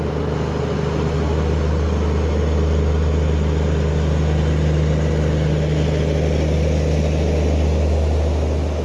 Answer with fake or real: real